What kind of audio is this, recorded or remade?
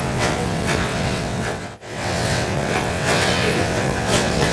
remade